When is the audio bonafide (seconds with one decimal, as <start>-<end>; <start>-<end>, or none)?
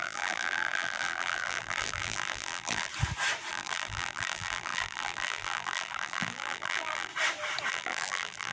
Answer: 2.9-3.5; 7.1-7.7